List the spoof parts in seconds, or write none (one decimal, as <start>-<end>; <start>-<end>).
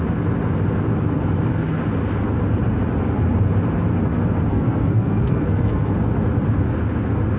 4.5-5.8